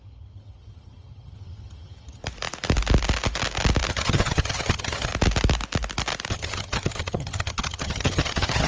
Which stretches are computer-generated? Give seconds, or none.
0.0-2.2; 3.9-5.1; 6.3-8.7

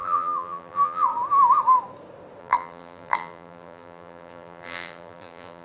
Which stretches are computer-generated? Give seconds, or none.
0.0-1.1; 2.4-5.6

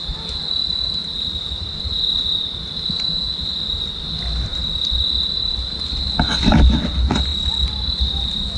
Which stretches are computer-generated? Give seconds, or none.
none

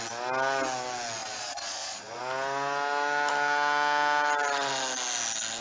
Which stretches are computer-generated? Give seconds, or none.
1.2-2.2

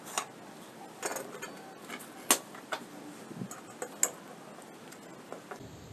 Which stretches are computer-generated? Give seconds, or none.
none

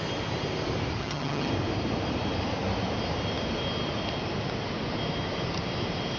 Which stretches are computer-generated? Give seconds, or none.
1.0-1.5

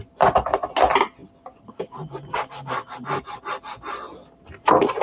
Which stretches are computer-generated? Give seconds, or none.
none